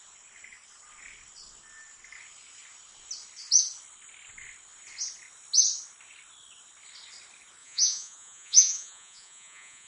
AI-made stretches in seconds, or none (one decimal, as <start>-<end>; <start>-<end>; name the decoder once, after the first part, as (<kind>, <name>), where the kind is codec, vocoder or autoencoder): 7.6-9.9 (vocoder, Vocos)